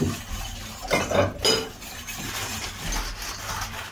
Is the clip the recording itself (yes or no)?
yes